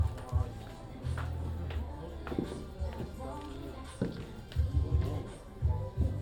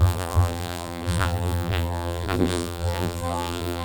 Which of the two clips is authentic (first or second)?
first